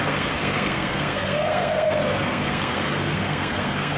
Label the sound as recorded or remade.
remade